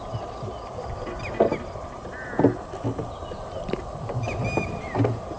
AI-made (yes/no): no